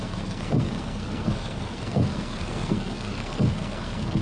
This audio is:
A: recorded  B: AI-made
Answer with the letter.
B